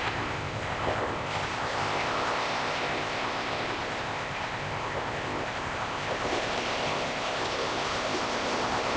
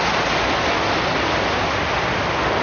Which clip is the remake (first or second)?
first